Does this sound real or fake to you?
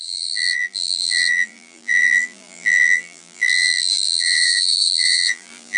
fake